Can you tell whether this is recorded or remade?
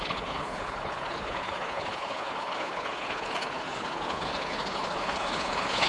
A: remade